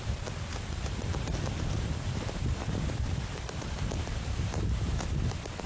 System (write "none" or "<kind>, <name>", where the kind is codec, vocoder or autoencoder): vocoder, BigVGAN v2